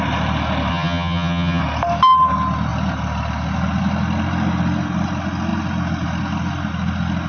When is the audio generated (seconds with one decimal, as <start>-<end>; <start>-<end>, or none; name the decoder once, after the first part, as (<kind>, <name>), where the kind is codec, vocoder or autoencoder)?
0.7-1.6 (vocoder, HiFi-GAN)

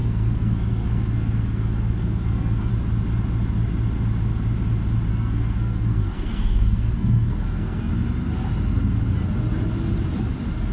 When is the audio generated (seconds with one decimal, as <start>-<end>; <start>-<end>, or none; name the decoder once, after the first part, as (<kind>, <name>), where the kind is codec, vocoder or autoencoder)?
0.0-2.7 (codec, SNAC); 5.1-7.9

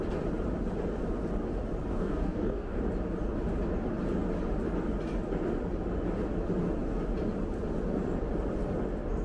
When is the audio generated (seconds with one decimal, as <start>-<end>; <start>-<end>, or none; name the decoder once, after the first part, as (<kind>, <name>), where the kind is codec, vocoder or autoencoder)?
1.9-2.8 (codec, DAC)

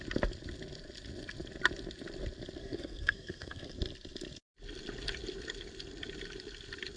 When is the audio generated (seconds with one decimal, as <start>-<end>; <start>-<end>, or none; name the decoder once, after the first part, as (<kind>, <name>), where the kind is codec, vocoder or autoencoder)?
2.6-3.7 (codec, SNAC)

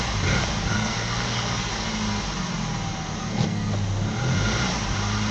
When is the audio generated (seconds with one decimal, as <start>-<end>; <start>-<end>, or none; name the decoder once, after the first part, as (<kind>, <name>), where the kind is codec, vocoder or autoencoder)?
0.7-1.7 (codec, SNAC); 3.2-3.7